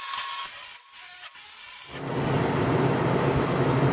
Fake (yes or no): no